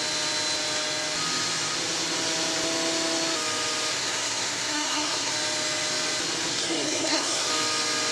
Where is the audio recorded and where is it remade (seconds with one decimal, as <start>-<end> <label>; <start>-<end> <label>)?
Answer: 0.0-3.9 recorded; 3.9-5.3 remade; 5.3-6.5 recorded; 6.5-7.5 remade; 7.5-8.1 recorded